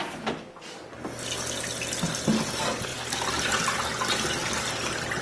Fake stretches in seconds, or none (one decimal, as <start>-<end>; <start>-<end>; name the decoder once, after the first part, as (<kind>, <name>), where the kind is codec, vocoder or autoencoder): none